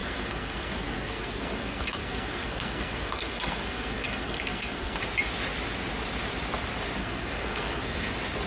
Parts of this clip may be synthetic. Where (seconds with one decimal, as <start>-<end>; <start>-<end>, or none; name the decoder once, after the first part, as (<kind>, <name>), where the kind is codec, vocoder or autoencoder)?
0.0-5.0 (codec, SNAC); 7.0-8.1